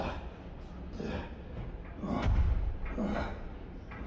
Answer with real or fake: real